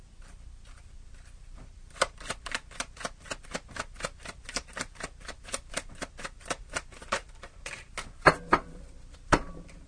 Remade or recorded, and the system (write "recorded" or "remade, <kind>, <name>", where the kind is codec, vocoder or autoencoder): remade, vocoder, BigVGAN v2